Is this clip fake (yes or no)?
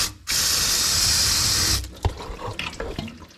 no